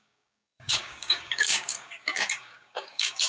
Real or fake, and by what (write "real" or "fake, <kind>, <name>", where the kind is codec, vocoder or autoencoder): fake, codec, DAC